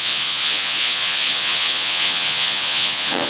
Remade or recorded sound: remade